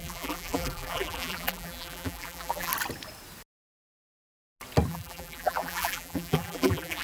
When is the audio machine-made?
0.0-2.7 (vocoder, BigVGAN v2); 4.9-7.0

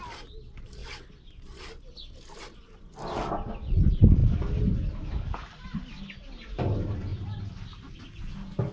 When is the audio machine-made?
7.1-8.1 (vocoder, BigVGAN v2)

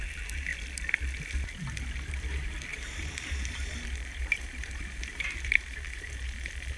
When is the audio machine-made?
0.0-0.5 (vocoder, BigVGAN v2); 2.1-6.8

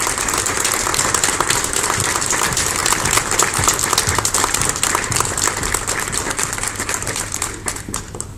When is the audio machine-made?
0.0-0.9 (vocoder, BigVGAN v2); 1.6-2.8; 6.5-8.4

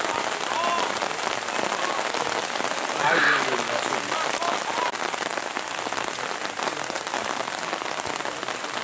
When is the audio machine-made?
6.7-7.2 (vocoder, BigVGAN v2)